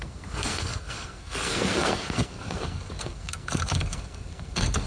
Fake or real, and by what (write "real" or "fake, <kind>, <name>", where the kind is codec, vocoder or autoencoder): fake, codec, SNAC